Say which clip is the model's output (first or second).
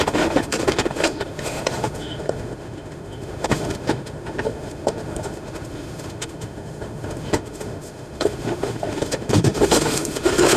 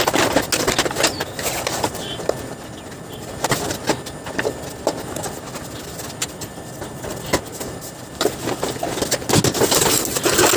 first